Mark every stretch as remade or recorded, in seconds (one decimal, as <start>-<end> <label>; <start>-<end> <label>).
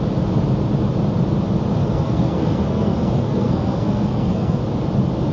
0.0-1.8 recorded; 1.8-4.6 remade; 4.6-5.3 recorded